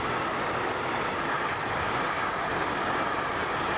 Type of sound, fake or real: real